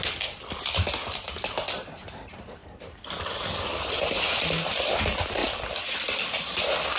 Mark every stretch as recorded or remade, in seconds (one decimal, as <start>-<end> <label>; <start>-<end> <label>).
0.0-2.6 recorded; 2.6-3.6 remade; 3.6-5.4 recorded; 5.4-7.0 remade